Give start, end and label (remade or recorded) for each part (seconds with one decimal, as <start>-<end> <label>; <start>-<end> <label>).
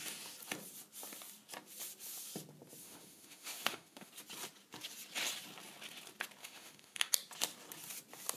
0.0-2.8 recorded; 2.8-4.1 remade; 4.1-6.4 recorded; 6.4-7.1 remade; 7.1-8.4 recorded